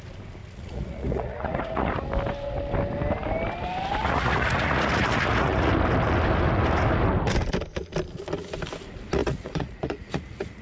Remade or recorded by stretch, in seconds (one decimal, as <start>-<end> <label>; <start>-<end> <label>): 0.0-0.4 recorded; 0.4-1.9 remade; 1.9-4.0 recorded; 4.0-5.7 remade; 5.7-9.2 recorded; 9.2-10.6 remade

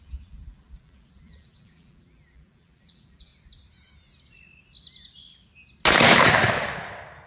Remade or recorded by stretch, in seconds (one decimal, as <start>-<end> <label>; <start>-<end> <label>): 0.0-3.3 remade; 3.3-7.3 recorded

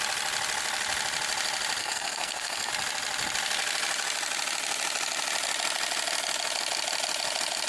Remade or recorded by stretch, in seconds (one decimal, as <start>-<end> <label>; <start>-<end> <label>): 0.0-1.8 recorded; 1.8-2.7 remade; 2.7-7.7 recorded

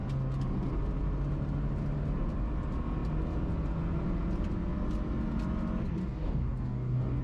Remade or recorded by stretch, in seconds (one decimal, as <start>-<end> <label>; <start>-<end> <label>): 0.0-6.0 recorded; 6.0-7.2 remade

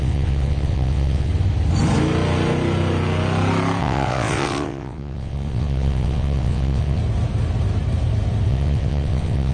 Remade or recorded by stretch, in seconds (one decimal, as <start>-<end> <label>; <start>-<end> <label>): 0.0-1.3 remade; 1.3-3.8 recorded; 3.8-7.0 remade; 7.0-8.5 recorded; 8.5-9.5 remade

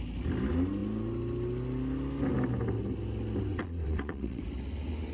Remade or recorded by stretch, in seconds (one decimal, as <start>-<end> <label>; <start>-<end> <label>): 0.0-3.5 recorded; 3.5-4.4 remade; 4.4-5.1 recorded

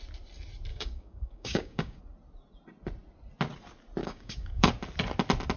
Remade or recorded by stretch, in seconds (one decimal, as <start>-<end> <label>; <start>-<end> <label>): 0.0-0.7 recorded; 0.7-2.0 remade; 2.0-4.0 recorded; 4.0-4.7 remade; 4.7-5.6 recorded

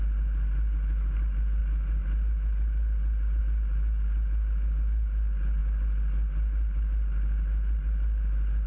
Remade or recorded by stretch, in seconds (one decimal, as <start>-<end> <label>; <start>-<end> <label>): 0.0-8.7 recorded